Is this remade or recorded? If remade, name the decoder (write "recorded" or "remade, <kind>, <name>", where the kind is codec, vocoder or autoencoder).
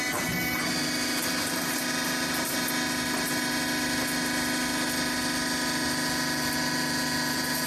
recorded